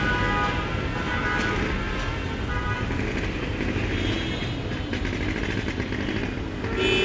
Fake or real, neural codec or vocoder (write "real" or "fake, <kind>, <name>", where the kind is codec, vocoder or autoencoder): real